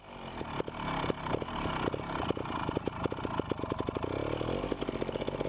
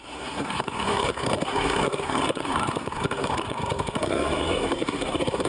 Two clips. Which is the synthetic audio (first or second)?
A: second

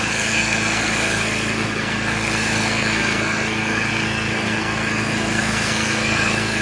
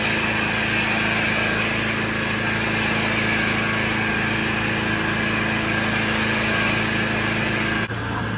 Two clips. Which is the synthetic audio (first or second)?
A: first